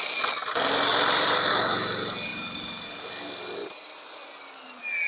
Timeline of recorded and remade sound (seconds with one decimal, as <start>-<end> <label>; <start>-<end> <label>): 0.0-2.3 recorded; 2.3-3.1 remade; 3.1-3.6 recorded; 3.6-4.1 remade; 4.1-5.1 recorded